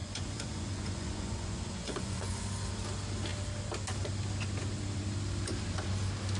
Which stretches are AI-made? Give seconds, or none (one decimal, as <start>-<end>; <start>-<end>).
0.0-2.4